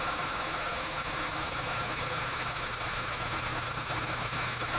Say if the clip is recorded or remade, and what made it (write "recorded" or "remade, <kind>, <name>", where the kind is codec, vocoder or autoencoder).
remade, autoencoder, DAC-VAE